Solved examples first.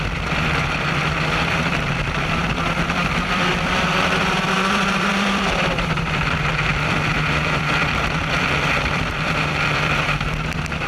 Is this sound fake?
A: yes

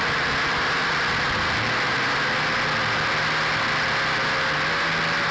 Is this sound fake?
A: no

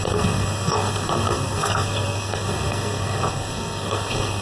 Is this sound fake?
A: yes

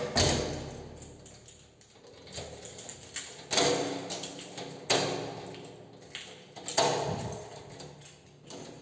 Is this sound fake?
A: no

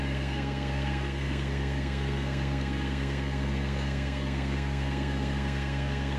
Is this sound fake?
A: yes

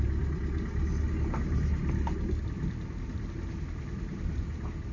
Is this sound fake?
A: no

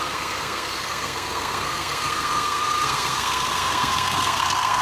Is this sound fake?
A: yes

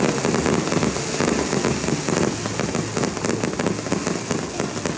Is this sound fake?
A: no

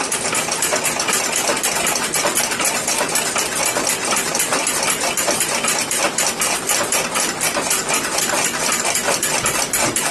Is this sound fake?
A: no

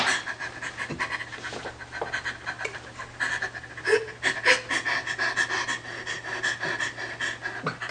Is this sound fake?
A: no